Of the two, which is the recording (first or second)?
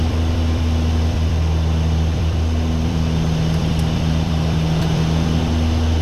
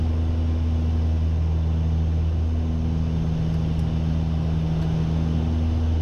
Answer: second